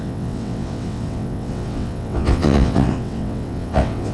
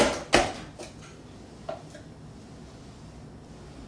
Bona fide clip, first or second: second